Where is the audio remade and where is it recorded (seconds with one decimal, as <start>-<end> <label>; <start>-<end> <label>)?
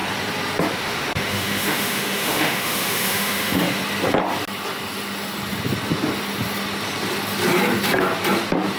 0.0-0.7 recorded; 0.7-3.8 remade; 3.8-8.8 recorded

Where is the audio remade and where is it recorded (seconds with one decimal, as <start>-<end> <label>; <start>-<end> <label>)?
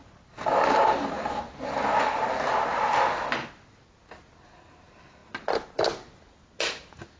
0.0-7.2 recorded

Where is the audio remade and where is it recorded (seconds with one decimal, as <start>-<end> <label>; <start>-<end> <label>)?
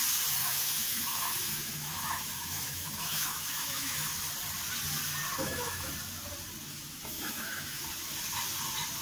0.0-0.4 recorded; 0.4-4.3 remade; 4.3-5.4 recorded; 5.4-5.9 remade; 5.9-6.7 recorded; 6.7-7.8 remade; 7.8-9.0 recorded